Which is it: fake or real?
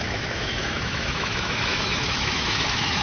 fake